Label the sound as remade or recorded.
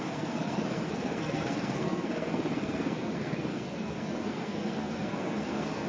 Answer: remade